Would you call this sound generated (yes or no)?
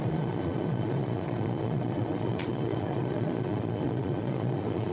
yes